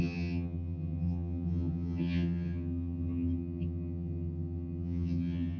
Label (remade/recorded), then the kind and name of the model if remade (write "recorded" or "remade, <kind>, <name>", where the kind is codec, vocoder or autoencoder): remade, vocoder, HiFi-GAN